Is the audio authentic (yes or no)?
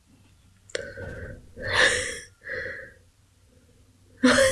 yes